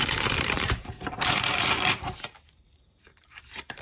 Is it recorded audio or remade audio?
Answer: remade